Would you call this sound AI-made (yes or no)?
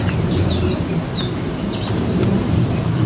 yes